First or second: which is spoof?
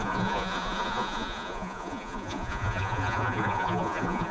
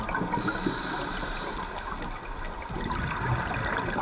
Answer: first